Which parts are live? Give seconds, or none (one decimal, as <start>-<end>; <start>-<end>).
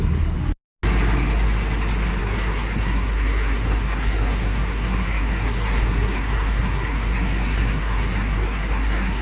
0.4-2.2